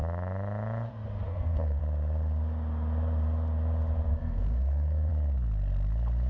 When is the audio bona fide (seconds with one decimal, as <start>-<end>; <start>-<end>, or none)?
0.0-1.3; 1.8-4.1; 5.1-6.3